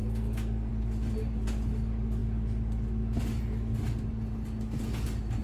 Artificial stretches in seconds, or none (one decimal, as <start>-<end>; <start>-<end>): 0.0-0.7